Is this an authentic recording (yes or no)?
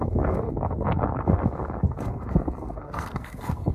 no